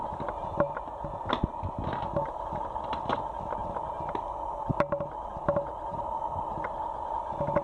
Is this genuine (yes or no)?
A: yes